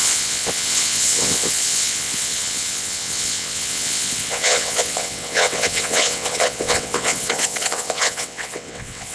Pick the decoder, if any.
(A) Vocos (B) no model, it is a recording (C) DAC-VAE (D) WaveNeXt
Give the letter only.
D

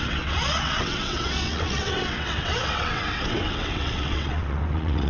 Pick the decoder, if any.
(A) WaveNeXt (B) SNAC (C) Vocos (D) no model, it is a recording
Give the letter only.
A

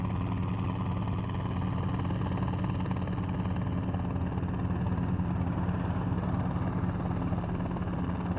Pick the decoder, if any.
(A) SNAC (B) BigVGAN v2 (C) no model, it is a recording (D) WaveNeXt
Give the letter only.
C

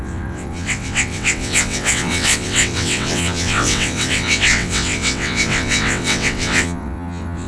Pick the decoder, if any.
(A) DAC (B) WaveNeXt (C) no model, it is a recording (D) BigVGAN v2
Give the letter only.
B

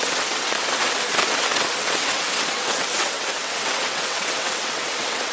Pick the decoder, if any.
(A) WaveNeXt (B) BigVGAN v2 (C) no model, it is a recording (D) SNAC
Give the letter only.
A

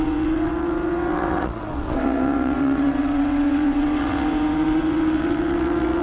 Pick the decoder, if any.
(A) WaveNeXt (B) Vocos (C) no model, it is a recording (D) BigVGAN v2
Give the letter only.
A